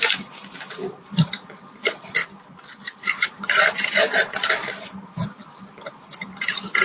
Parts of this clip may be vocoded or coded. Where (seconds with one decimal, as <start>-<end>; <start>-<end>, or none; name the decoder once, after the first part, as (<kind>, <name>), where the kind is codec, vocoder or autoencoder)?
0.0-2.2 (vocoder, BigVGAN v2); 3.0-6.8